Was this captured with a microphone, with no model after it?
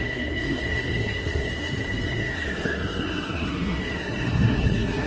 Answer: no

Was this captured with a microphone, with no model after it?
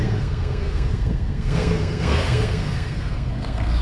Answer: no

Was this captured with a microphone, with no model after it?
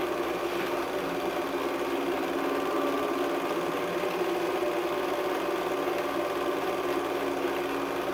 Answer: yes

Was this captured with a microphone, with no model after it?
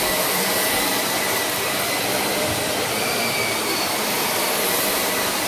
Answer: no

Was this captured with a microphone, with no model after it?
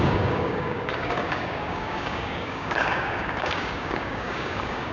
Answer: no